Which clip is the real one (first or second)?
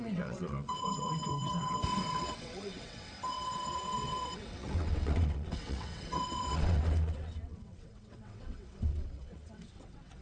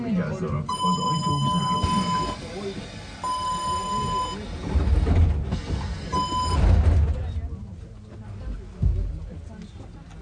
second